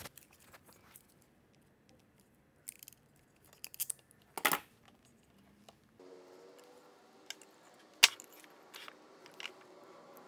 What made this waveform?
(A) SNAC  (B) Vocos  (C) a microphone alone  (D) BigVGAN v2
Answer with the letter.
C